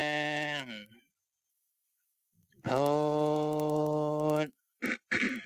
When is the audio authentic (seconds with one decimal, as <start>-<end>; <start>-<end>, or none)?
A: 1.1-1.5; 4.8-5.5